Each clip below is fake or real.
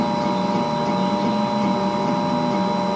real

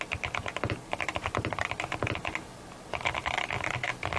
real